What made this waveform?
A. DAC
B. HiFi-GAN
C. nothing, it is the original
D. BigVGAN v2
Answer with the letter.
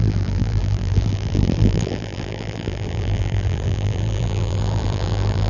D